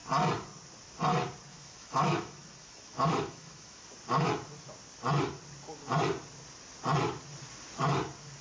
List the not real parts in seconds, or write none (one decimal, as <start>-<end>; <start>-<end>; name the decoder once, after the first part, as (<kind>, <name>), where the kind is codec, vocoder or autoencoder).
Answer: 1.5-3.8 (autoencoder, DAC-VAE)